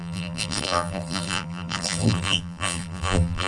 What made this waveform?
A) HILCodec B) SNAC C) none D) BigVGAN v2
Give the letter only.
D